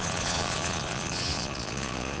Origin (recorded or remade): remade